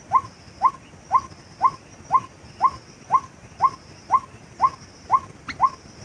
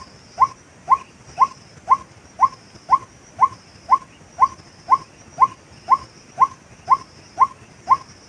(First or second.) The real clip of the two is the second